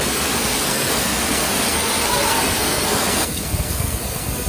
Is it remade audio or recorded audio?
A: remade